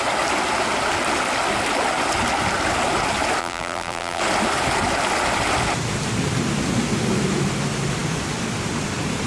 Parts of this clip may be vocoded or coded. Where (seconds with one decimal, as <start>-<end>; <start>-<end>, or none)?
3.4-4.2